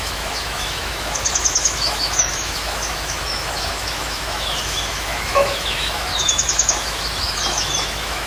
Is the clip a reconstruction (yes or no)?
yes